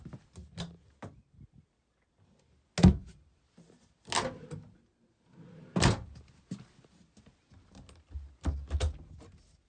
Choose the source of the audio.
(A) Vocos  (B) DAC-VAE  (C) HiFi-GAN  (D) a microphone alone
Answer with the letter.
D